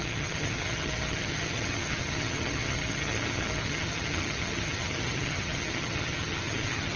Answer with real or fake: fake